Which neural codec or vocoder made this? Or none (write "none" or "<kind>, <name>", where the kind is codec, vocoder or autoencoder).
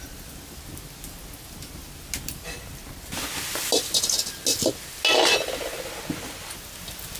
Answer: none